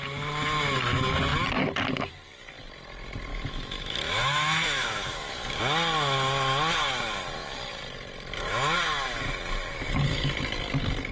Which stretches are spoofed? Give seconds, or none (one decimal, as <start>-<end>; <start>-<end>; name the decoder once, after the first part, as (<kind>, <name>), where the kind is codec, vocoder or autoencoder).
3.3-5.6 (autoencoder, DAC-VAE)

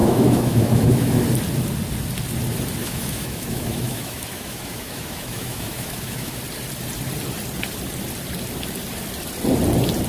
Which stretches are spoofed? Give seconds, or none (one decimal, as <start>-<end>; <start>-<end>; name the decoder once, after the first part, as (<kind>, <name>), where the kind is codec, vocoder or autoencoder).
0.0-1.2 (autoencoder, DAC-VAE); 2.8-6.4